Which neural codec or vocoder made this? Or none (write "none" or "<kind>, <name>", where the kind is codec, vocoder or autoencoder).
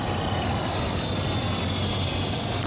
none